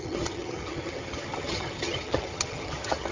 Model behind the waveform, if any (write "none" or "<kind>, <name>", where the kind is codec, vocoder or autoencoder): vocoder, HiFi-GAN